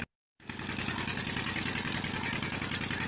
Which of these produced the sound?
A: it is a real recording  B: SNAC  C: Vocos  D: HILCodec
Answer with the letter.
A